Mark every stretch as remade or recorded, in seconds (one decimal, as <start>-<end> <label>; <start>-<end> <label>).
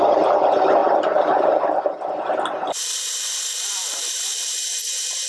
0.0-5.3 recorded